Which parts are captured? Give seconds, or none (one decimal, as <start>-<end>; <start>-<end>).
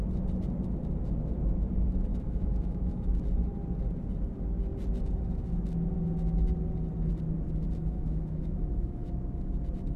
0.0-2.1; 3.1-7.8; 9.1-10.0